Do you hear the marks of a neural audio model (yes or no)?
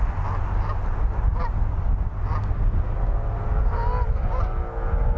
no